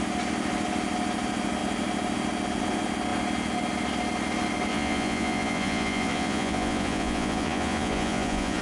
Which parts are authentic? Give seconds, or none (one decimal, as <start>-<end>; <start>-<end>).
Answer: 0.0-4.7